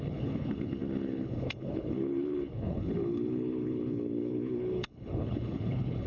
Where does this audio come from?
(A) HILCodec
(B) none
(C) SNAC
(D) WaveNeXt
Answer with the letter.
A